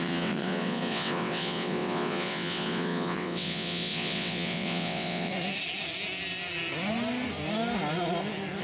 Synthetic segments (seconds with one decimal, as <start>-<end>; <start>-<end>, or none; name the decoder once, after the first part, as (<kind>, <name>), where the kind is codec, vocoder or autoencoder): 0.0-5.3 (vocoder, WaveNeXt)